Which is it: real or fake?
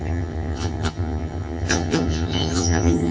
fake